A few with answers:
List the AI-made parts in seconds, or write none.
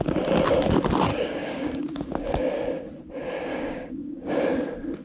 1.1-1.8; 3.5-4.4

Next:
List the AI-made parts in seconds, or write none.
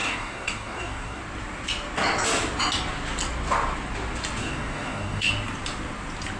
0.0-1.2; 4.4-5.3